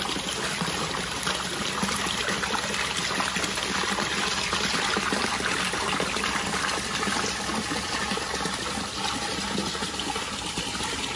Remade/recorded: recorded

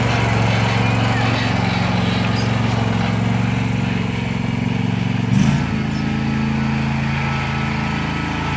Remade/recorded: recorded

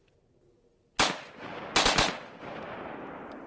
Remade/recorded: recorded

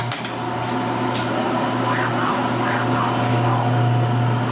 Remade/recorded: recorded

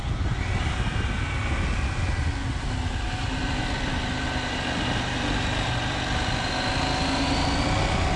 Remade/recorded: recorded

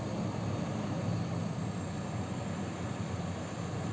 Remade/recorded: recorded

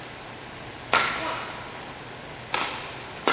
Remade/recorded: recorded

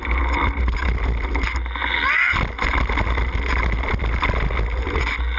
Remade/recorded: recorded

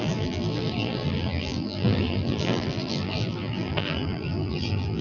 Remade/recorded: remade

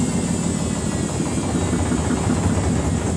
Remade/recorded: recorded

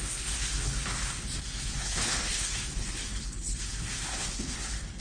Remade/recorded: remade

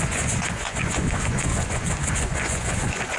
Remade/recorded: remade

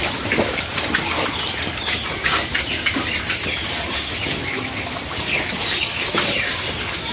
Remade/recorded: recorded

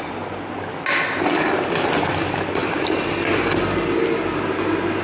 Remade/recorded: recorded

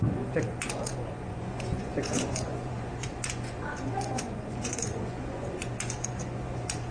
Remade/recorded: remade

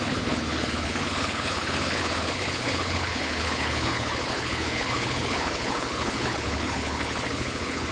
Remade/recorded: remade